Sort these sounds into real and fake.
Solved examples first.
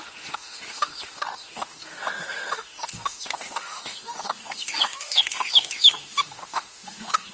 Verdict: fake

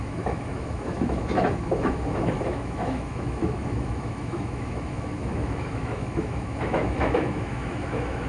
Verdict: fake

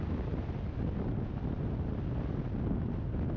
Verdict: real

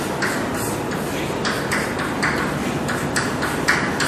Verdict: real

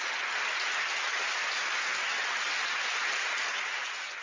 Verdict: real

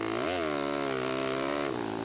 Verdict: real